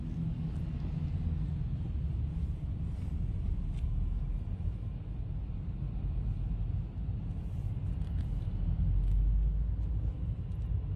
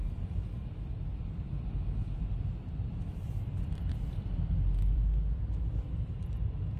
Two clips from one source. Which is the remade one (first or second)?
second